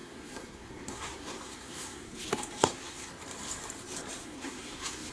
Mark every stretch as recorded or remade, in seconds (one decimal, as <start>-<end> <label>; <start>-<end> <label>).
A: 0.0-3.1 remade; 3.1-4.2 recorded; 4.2-5.1 remade